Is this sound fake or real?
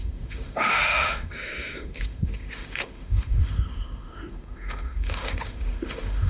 fake